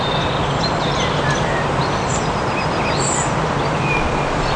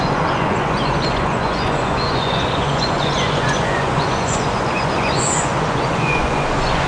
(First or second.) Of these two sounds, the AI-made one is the second